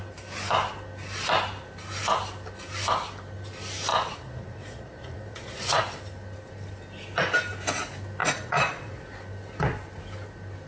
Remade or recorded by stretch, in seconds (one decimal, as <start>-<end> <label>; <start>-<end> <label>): 0.0-3.9 recorded; 3.9-5.8 remade; 5.8-8.2 recorded; 8.2-9.0 remade; 9.0-10.7 recorded